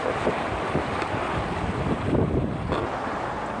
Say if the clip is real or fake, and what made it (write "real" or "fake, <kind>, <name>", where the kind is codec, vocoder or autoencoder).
real